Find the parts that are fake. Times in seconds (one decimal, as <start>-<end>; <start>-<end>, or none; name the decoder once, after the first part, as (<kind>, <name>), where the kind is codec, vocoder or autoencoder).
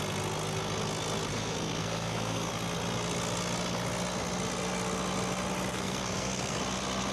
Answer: 1.3-2.5 (codec, SNAC); 5.7-6.6